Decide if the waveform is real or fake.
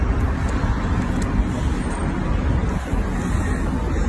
real